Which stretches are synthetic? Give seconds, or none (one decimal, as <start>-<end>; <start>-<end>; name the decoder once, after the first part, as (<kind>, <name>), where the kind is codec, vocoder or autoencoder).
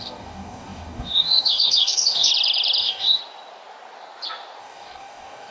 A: 0.0-2.3 (codec, DAC); 2.8-3.2; 4.6-5.5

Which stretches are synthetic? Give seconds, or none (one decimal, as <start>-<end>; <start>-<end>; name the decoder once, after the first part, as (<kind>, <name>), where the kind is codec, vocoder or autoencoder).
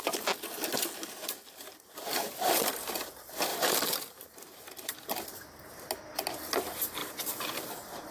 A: 2.1-2.6 (vocoder, BigVGAN v2); 3.5-5.9; 7.0-8.1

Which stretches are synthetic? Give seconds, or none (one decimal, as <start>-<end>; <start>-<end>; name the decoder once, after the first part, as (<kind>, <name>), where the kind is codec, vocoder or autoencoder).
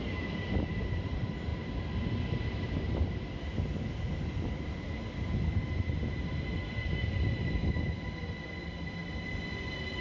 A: 0.0-9.0 (vocoder, BigVGAN v2); 9.5-10.0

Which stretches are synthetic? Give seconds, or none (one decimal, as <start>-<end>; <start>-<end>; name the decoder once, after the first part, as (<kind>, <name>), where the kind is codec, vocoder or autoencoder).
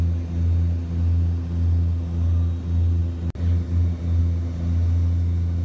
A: none